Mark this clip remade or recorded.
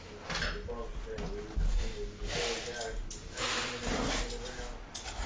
recorded